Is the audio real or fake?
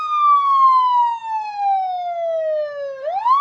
real